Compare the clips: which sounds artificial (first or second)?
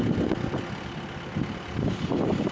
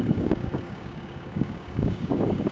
second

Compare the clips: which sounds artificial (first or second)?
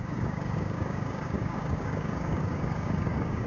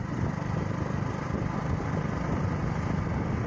first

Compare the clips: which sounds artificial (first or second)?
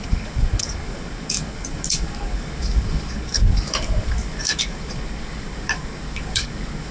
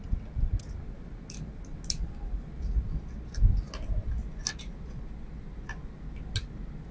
first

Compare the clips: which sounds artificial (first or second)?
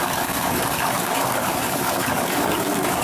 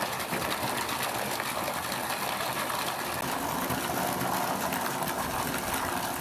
first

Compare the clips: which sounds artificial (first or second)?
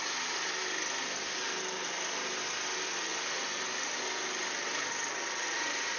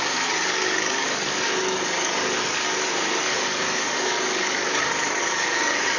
second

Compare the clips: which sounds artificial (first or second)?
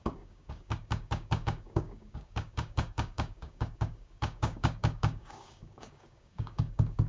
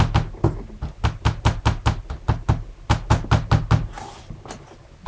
first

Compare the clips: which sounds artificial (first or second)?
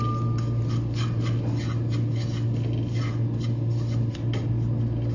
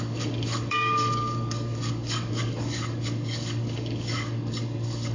second